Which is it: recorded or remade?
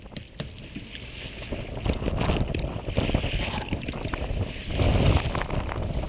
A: recorded